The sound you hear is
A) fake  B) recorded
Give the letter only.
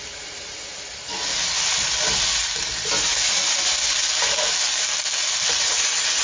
B